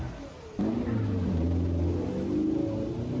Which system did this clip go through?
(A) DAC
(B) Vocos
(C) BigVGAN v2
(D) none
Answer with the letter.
D